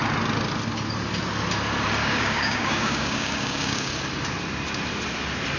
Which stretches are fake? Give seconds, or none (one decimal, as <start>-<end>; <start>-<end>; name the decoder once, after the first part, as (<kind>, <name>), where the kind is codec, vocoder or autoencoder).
2.0-3.9 (codec, DAC)